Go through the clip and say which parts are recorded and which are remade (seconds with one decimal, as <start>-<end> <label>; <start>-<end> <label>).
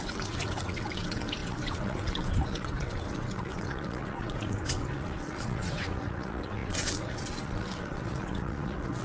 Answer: 0.0-9.0 remade